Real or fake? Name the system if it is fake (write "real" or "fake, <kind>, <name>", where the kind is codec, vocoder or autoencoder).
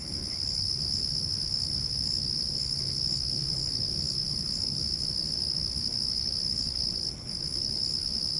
fake, codec, HILCodec